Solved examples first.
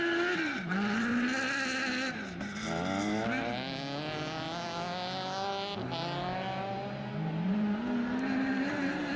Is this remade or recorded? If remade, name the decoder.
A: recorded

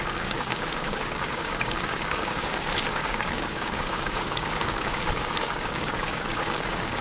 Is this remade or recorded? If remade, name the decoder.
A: remade, codec, DAC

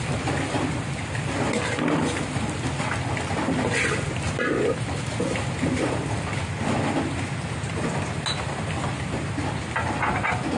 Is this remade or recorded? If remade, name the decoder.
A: recorded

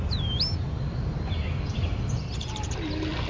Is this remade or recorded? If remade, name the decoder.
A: recorded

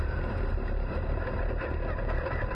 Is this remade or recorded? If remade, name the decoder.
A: recorded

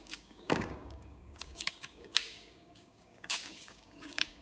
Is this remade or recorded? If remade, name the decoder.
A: remade, codec, DAC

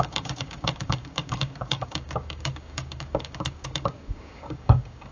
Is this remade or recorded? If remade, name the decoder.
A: remade, codec, DAC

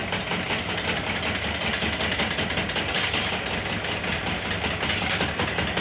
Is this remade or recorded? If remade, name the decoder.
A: recorded